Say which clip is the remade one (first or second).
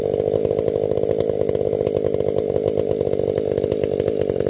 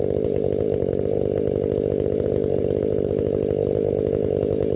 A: second